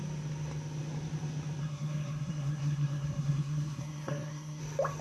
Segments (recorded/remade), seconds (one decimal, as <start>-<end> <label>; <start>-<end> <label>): 0.0-1.6 recorded; 1.6-4.6 remade; 4.6-5.0 recorded